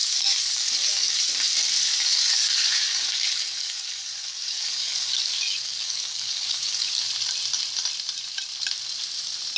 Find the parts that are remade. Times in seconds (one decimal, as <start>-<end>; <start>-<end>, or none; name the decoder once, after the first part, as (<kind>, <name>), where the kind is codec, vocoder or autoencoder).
0.0-1.2 (codec, DAC); 1.9-7.0